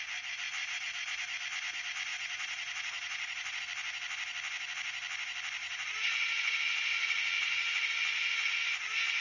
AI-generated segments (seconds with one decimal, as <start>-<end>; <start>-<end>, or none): 0.6-1.2; 2.1-3.6; 5.6-7.9